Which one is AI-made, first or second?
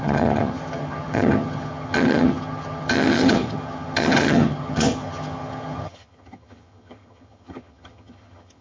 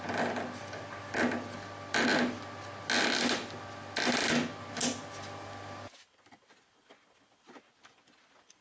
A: first